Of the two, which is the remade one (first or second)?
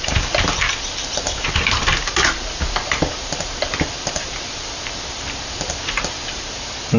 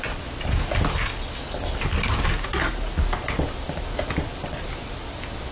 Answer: first